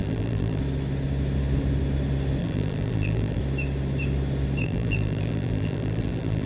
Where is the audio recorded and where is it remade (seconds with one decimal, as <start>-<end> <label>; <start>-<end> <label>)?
0.0-0.6 remade; 0.6-2.4 recorded; 2.4-3.4 remade; 3.4-4.6 recorded; 4.6-6.5 remade